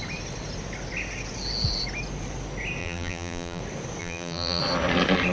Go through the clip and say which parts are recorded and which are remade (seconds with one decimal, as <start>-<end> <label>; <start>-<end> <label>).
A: 0.0-2.8 recorded; 2.8-3.6 remade; 3.6-4.0 recorded; 4.0-4.6 remade; 4.6-5.3 recorded